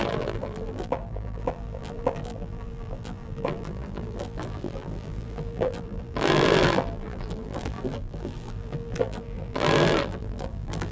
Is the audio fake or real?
fake